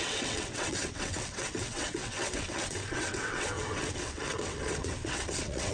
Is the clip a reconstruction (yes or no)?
yes